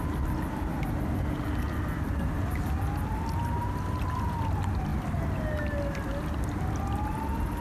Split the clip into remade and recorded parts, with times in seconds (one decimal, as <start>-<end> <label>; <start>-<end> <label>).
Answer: 0.0-7.6 recorded